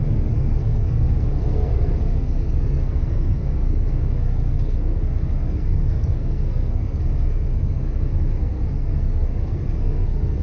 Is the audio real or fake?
fake